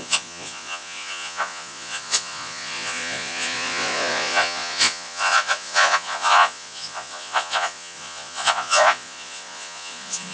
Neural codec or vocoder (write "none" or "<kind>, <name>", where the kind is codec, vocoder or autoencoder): vocoder, Vocos